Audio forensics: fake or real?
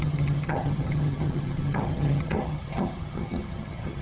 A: fake